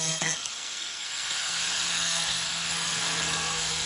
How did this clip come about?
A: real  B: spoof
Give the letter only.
B